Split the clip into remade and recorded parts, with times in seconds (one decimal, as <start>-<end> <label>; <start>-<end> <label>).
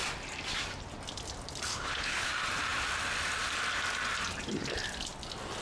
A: 0.0-1.7 recorded; 1.7-2.3 remade; 2.3-5.6 recorded